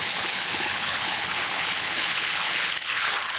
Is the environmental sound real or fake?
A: fake